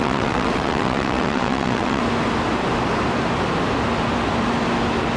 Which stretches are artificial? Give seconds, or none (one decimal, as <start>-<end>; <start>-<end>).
0.0-2.0